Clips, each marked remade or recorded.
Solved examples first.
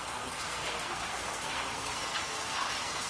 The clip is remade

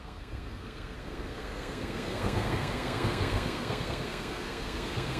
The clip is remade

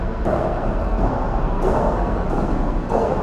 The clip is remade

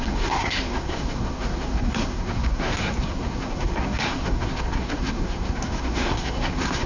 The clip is remade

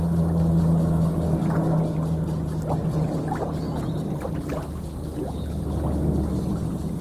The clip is recorded